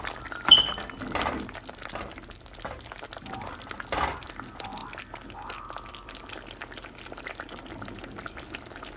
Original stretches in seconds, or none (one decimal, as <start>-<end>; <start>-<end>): 0.0-9.0